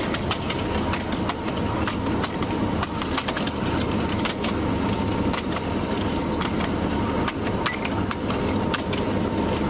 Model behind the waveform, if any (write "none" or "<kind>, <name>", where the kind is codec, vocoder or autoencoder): none